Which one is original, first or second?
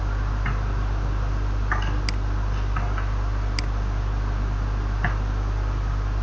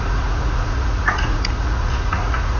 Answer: first